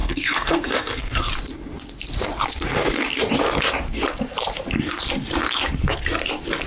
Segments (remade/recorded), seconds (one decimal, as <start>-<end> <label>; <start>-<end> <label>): 0.0-1.3 remade; 1.3-6.7 recorded